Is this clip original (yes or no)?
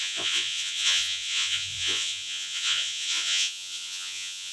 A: no